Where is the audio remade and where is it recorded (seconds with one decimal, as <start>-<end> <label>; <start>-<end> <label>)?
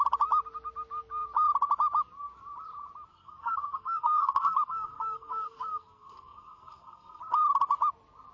0.0-3.1 recorded; 3.1-7.2 remade; 7.2-8.3 recorded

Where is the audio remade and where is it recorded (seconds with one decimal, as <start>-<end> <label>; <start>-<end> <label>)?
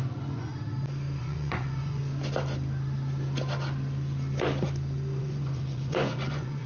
0.0-0.5 remade; 0.5-1.2 recorded; 1.2-2.0 remade; 2.0-5.2 recorded; 5.2-6.7 remade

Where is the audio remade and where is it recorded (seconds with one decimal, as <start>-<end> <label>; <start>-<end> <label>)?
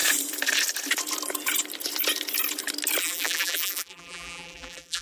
0.0-3.0 recorded; 3.0-5.0 remade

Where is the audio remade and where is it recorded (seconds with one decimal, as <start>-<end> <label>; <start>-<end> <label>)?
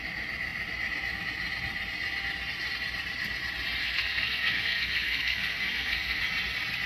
0.0-3.8 recorded; 3.8-6.2 remade; 6.2-6.9 recorded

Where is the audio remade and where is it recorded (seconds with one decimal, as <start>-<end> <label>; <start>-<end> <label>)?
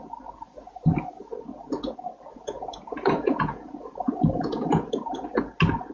0.0-2.3 recorded; 2.3-4.9 remade; 4.9-5.9 recorded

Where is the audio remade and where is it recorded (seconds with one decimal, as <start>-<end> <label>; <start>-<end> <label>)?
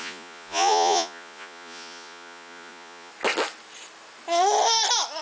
0.0-3.1 remade; 3.1-5.2 recorded